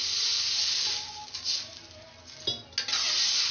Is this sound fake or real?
real